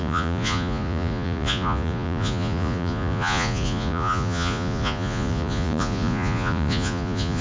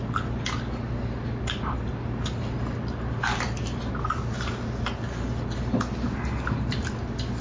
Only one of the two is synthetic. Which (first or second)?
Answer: first